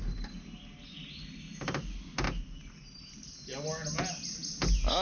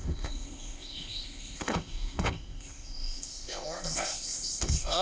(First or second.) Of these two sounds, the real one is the first